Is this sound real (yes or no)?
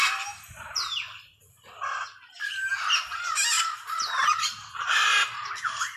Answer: yes